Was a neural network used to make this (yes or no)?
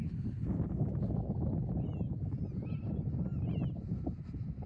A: no